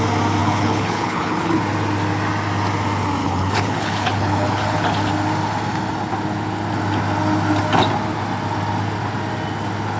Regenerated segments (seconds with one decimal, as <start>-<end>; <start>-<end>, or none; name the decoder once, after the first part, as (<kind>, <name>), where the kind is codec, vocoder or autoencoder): 0.4-1.6 (codec, HILCodec); 3.2-5.1